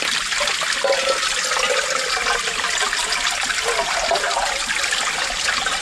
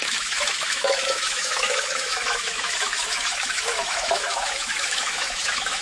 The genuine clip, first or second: first